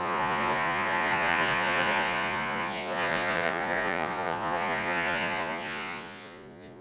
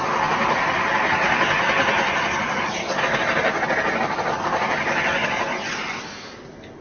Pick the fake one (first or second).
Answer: first